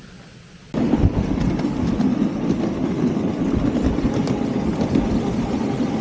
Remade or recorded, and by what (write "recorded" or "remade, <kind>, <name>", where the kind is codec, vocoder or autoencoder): recorded